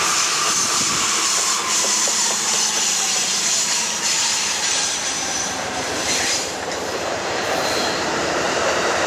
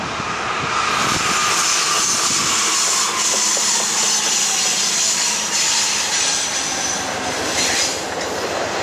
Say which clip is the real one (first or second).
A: second